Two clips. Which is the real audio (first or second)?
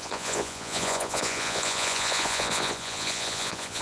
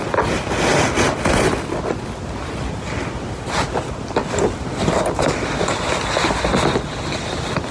second